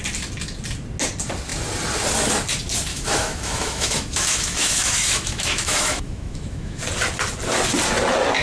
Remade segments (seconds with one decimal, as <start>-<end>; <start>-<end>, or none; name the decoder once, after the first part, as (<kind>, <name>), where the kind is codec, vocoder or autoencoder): 2.9-6.8 (autoencoder, DAC-VAE)